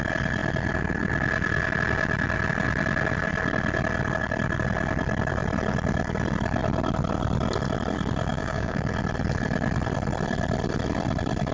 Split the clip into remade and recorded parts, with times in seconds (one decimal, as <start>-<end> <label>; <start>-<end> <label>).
0.0-8.3 recorded; 8.3-8.9 remade; 8.9-11.5 recorded